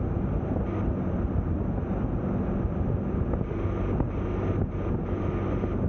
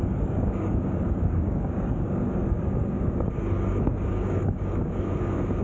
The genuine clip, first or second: first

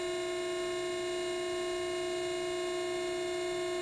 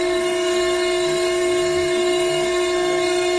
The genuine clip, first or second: first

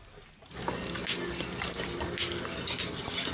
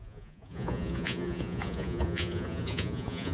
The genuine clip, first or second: first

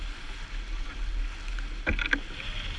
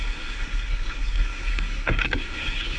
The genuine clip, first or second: first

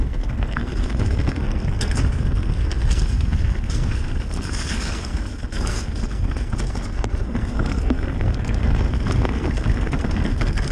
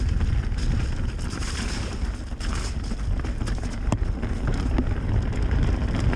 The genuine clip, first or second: second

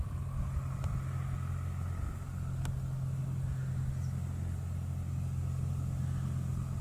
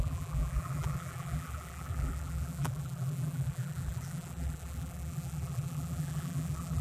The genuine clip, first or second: first